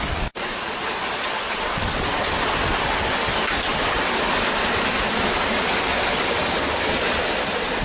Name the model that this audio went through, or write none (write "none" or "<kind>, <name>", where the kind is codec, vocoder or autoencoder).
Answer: none